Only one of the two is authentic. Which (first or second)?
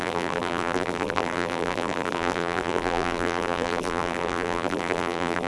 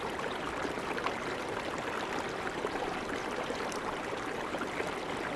second